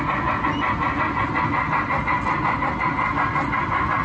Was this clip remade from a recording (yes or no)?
no